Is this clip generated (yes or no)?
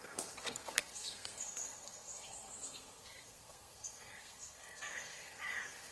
yes